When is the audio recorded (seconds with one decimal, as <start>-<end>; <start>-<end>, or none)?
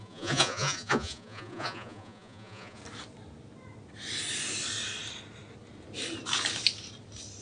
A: 2.8-7.4